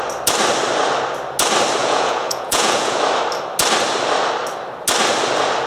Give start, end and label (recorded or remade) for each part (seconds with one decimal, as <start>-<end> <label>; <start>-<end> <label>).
0.0-1.8 recorded; 1.8-3.0 remade; 3.0-5.7 recorded